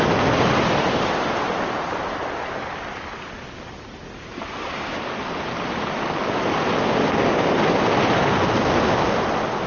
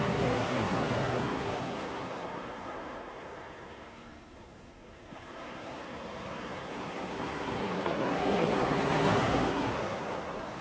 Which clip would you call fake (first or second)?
second